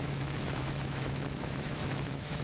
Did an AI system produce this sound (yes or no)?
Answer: yes